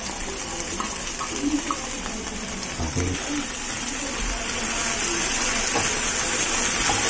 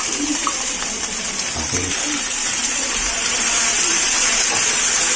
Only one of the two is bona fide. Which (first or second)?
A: first